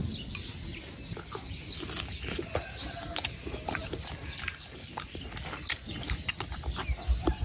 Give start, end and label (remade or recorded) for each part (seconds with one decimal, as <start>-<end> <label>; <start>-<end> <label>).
0.0-4.5 recorded; 4.5-5.2 remade; 5.2-7.4 recorded